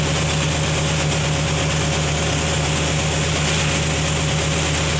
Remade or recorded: recorded